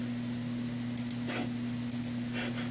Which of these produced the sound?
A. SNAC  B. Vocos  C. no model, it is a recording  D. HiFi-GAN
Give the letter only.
C